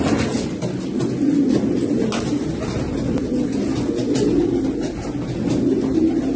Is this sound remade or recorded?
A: recorded